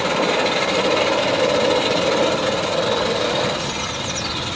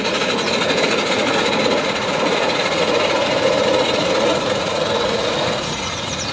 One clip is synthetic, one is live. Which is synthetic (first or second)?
second